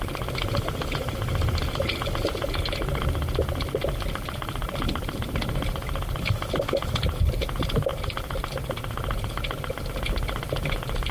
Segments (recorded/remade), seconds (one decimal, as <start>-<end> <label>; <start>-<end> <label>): 0.0-11.1 recorded